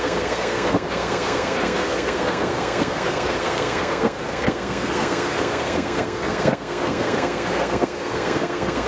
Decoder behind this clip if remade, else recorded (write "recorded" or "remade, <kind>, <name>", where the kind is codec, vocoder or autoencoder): remade, codec, SNAC